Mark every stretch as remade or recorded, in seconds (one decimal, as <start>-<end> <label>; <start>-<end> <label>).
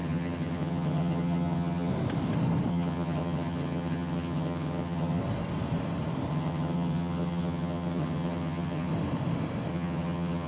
0.0-1.9 remade; 1.9-2.7 recorded; 2.7-5.2 remade; 5.2-6.3 recorded; 6.3-8.9 remade; 8.9-9.7 recorded; 9.7-10.5 remade